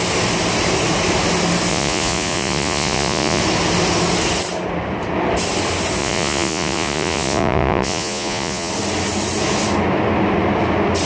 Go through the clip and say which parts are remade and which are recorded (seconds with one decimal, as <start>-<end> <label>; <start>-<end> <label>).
0.0-1.7 recorded; 1.7-3.4 remade; 3.4-6.0 recorded; 6.0-8.7 remade; 8.7-11.1 recorded